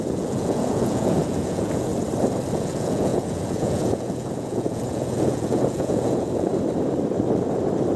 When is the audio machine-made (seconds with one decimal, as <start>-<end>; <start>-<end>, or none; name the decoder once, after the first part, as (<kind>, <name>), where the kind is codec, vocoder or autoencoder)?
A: 0.0-1.9 (vocoder, Vocos); 2.5-6.5